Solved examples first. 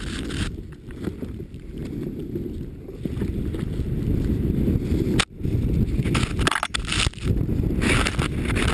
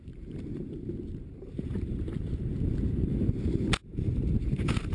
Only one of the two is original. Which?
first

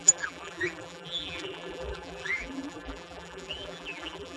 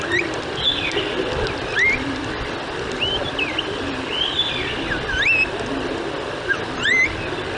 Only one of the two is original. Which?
second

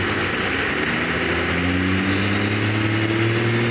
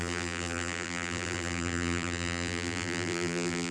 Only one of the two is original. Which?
first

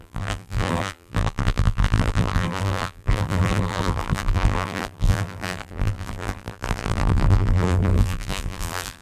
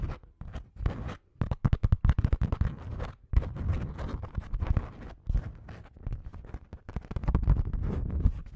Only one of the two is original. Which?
second